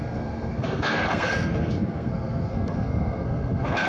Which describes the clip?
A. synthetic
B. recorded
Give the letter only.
A